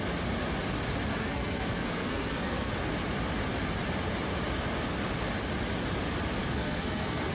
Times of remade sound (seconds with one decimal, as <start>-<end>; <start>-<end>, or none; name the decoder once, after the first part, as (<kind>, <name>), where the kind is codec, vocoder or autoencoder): 1.1-2.7 (codec, SNAC); 6.4-7.3